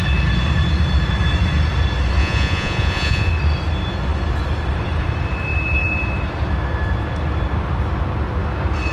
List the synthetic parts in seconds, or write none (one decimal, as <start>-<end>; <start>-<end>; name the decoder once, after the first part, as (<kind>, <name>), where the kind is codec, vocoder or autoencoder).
2.2-3.3 (vocoder, Vocos)